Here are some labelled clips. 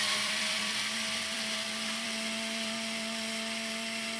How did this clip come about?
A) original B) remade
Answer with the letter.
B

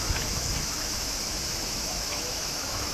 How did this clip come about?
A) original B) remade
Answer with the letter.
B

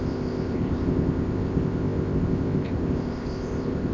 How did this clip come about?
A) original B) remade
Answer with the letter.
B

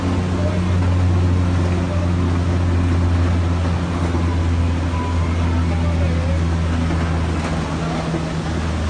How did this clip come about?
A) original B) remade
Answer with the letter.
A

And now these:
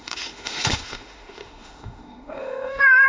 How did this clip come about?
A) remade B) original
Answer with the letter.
A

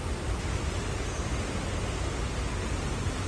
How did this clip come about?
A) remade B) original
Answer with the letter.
B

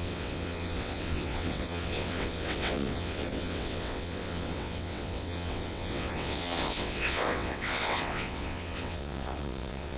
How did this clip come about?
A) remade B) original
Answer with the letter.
A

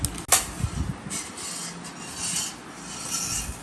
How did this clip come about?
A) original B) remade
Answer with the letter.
A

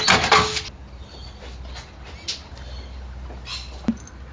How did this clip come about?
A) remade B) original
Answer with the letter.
B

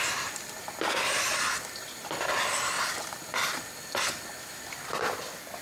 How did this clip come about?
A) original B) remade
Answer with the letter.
B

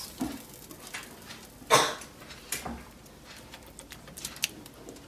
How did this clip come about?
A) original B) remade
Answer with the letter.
A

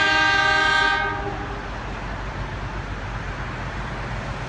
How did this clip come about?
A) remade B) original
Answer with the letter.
B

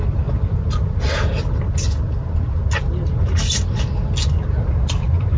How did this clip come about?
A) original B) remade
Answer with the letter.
A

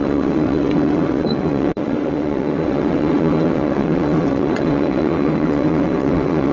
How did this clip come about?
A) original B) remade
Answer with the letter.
B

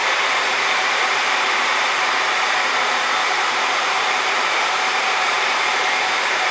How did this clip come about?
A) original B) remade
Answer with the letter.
B